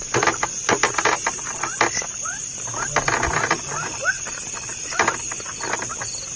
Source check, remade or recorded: recorded